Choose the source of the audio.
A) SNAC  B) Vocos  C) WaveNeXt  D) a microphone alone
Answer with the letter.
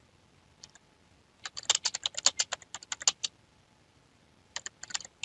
D